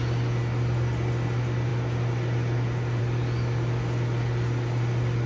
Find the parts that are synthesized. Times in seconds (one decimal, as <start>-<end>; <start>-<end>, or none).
none